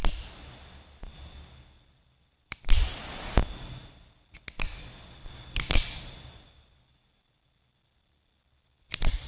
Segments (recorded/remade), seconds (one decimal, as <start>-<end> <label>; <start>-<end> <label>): 0.0-9.3 recorded

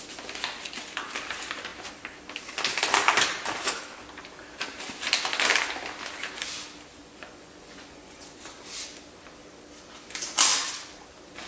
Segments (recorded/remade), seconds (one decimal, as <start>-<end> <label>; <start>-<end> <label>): 0.0-7.0 recorded; 7.0-8.4 remade; 8.4-11.5 recorded

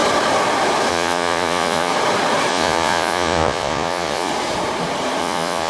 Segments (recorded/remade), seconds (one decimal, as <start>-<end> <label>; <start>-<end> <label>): 0.0-0.9 recorded; 0.9-1.9 remade; 1.9-2.5 recorded; 2.5-4.3 remade; 4.3-5.2 recorded; 5.2-5.7 remade

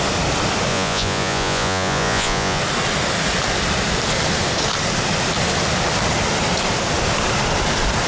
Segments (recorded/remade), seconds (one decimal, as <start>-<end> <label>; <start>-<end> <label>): 0.0-0.7 recorded; 0.7-2.6 remade; 2.6-8.1 recorded